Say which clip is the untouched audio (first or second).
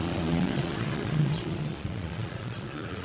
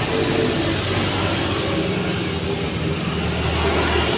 second